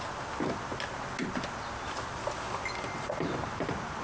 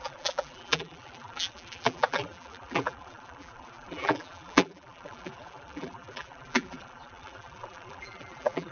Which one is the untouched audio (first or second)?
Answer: first